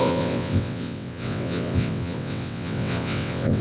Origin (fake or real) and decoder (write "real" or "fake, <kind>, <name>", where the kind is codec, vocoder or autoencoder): fake, vocoder, WaveNeXt